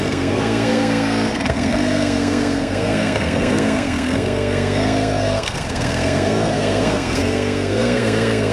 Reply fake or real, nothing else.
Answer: fake